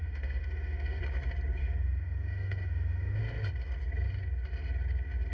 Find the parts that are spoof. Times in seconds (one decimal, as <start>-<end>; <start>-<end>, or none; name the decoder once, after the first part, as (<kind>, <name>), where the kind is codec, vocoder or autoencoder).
0.0-1.0 (autoencoder, DAC-VAE); 1.6-3.2